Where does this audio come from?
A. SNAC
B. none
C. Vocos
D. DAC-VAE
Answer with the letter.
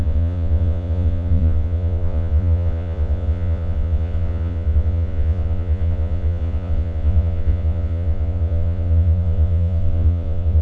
C